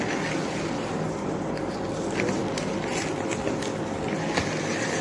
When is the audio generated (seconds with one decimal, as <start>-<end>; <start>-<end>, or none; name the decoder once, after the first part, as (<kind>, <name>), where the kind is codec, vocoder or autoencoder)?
none